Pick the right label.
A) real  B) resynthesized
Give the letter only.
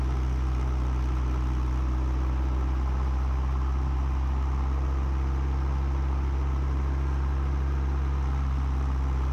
A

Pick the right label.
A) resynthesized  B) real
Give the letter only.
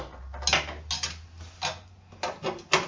B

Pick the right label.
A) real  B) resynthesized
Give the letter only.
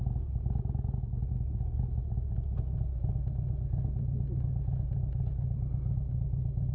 A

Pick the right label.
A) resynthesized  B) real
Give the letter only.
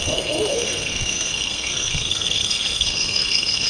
A